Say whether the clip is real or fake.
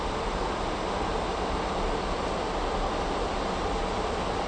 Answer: real